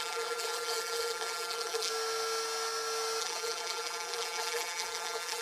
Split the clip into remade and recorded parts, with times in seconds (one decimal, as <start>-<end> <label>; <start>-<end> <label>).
0.0-1.9 remade; 1.9-3.2 recorded; 3.2-5.4 remade